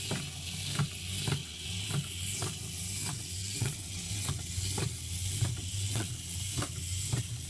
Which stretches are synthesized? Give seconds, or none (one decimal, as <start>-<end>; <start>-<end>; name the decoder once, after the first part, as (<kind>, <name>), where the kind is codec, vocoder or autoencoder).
1.4-1.9 (vocoder, WaveNeXt); 3.4-4.3; 5.6-6.1